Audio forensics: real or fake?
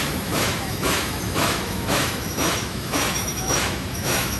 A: fake